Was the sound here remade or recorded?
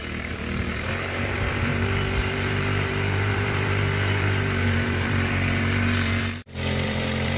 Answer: remade